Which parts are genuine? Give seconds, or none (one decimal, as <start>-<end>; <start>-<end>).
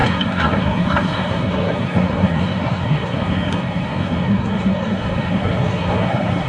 none